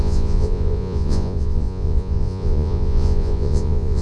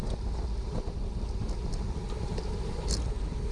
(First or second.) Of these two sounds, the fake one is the first